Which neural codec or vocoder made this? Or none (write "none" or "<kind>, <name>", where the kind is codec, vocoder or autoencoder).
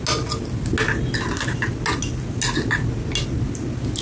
none